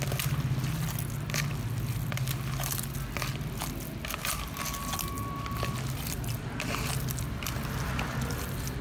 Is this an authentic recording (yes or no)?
yes